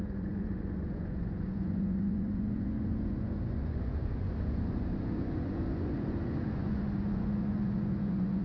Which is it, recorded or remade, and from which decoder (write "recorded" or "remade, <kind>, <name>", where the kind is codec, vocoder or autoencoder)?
remade, vocoder, Vocos